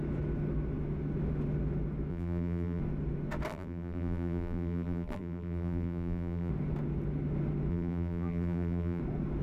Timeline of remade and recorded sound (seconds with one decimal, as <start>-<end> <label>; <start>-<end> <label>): 0.0-2.1 recorded; 2.1-2.8 remade; 2.8-3.5 recorded; 3.5-6.5 remade; 6.5-7.7 recorded; 7.7-9.0 remade; 9.0-9.4 recorded